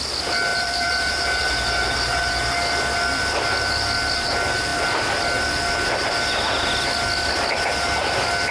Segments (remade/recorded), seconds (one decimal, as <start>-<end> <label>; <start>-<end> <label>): 0.0-0.5 recorded; 0.5-2.3 remade; 2.3-8.5 recorded